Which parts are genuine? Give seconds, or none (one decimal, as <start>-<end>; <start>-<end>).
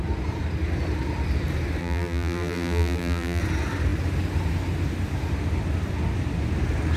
0.0-1.8; 3.4-7.0